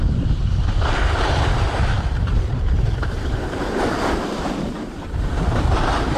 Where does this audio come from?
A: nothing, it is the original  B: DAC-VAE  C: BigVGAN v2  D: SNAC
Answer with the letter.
C